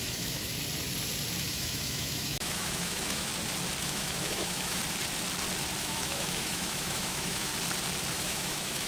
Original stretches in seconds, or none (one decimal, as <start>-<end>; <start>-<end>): 0.5-1.4; 3.3-3.8; 4.8-5.8; 7.5-8.1